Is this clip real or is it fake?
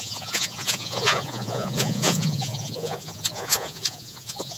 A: fake